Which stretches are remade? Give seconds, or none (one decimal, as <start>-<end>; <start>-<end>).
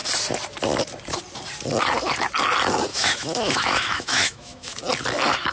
2.9-4.8